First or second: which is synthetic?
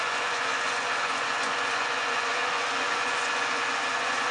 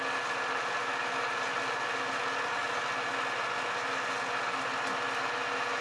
first